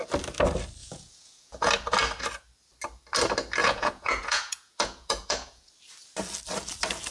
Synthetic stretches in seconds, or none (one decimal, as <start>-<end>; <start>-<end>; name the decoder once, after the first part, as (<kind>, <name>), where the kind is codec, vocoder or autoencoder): 0.8-1.7 (vocoder, Vocos); 3.6-5.7